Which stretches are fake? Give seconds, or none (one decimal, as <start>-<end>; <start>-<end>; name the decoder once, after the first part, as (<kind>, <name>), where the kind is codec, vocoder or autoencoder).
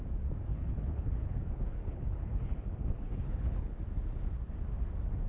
0.5-3.7 (codec, HILCodec)